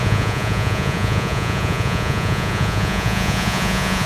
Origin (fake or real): fake